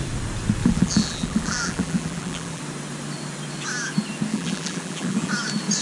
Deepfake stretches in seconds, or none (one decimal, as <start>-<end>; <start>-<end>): 0.6-2.6; 4.3-5.3